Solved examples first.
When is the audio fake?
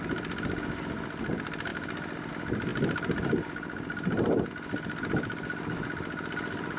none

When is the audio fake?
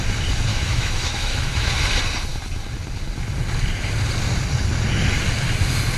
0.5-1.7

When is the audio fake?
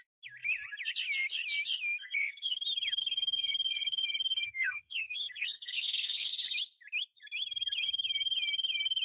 2.0-2.6; 3.0-6.3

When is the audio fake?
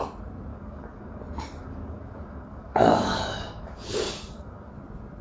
0.5-1.2; 1.6-4.7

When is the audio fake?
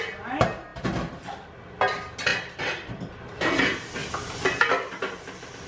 2.3-3.1; 4.0-5.3